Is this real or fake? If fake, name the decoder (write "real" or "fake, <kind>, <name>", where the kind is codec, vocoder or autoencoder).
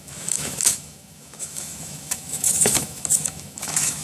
fake, autoencoder, DAC-VAE